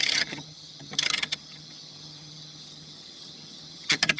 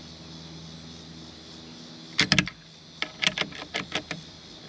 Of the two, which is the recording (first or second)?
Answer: second